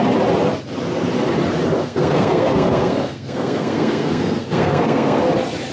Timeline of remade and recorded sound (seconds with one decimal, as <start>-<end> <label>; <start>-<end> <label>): 0.0-1.8 recorded; 1.8-5.2 remade; 5.2-5.7 recorded